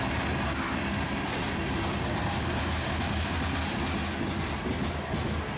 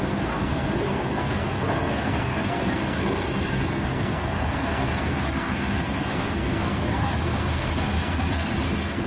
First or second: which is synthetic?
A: second